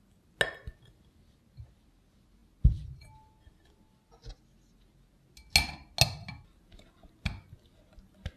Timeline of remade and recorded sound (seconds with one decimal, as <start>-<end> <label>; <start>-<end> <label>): 0.0-8.4 recorded